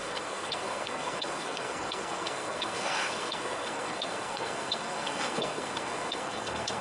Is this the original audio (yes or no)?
no